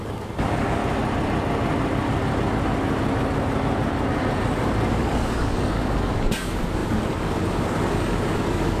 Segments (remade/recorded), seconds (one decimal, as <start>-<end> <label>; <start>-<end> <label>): 0.0-0.8 remade; 0.8-4.9 recorded; 4.9-8.8 remade